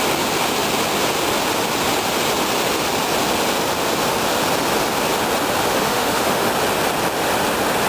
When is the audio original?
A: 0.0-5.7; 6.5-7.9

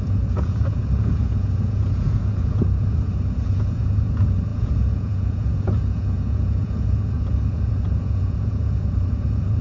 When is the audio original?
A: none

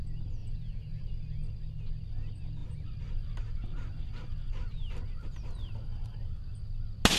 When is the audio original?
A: 0.0-0.4; 1.0-7.2

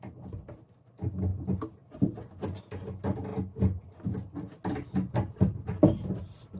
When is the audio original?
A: 0.0-6.6